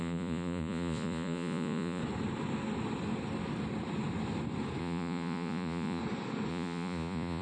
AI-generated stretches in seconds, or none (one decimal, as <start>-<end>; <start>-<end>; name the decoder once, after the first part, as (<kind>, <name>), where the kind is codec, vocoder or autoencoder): 0.0-2.0 (vocoder, Vocos); 4.8-6.0; 6.5-7.4